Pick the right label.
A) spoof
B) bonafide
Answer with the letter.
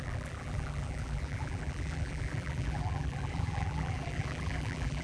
A